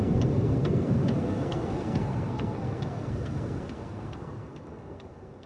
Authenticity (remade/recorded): remade